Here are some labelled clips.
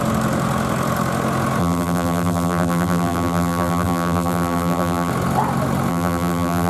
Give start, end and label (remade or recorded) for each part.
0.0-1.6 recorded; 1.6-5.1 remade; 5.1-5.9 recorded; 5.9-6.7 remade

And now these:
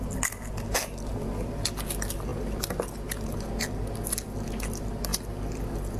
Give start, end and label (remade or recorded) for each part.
0.0-6.0 recorded

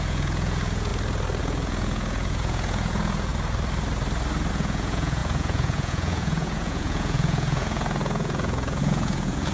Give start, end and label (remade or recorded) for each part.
0.0-0.9 remade; 0.9-1.4 recorded; 1.4-3.3 remade; 3.3-4.5 recorded; 4.5-9.5 remade

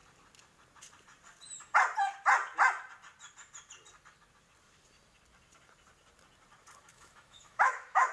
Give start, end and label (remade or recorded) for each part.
0.0-6.9 recorded; 6.9-8.1 remade

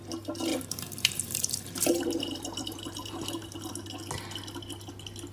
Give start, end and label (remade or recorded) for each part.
0.0-0.5 recorded; 0.5-3.7 remade; 3.7-5.3 recorded